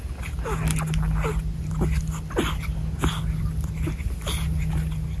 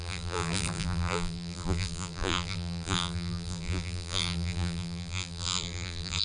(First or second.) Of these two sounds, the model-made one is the second